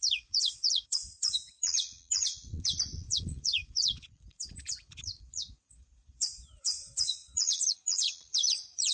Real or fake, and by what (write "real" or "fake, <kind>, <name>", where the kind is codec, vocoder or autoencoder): fake, vocoder, Vocos